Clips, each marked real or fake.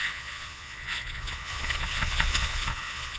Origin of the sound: fake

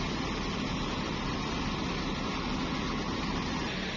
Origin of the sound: real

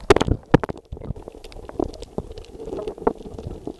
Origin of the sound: real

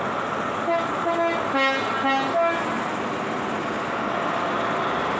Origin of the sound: real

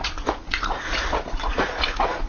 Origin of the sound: fake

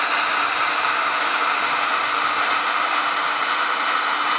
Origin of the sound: real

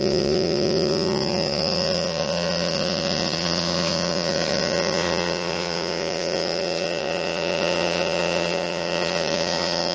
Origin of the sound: fake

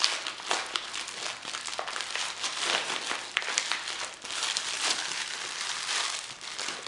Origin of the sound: real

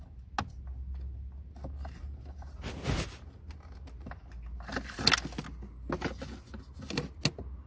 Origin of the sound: real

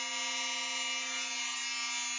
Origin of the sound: real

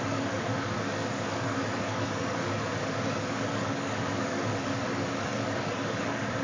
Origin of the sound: fake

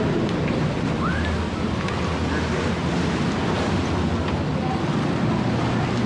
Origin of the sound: real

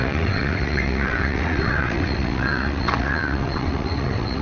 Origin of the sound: fake